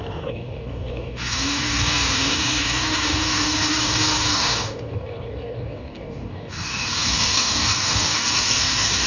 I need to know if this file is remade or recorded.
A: remade